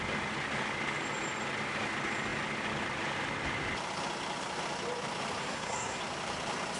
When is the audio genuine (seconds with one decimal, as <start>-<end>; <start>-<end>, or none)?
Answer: 0.0-5.4; 6.0-6.8

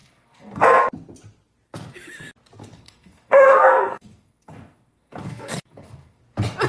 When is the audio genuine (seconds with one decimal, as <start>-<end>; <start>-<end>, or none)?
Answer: 0.8-2.6; 6.2-6.7

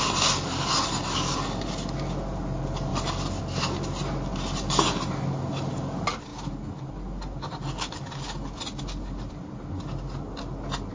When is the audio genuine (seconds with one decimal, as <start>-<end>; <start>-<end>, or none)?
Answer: 0.0-10.9

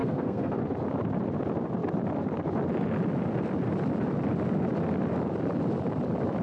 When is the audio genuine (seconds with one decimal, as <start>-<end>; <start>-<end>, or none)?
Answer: 0.6-6.4

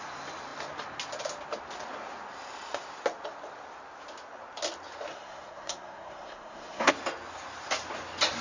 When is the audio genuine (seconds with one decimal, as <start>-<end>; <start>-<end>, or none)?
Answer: 0.0-5.1; 6.9-8.4

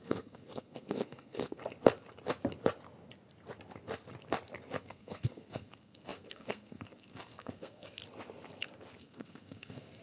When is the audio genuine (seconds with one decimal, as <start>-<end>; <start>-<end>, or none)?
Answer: 1.6-4.8; 8.0-9.0

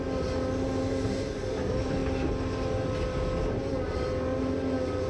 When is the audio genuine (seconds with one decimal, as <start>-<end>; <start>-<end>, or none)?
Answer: 0.0-5.1